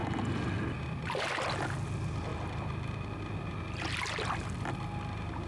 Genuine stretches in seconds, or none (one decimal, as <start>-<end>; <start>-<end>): 0.0-5.5